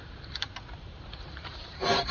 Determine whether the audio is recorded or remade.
remade